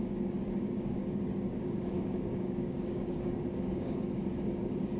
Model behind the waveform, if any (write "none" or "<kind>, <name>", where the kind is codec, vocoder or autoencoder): codec, DAC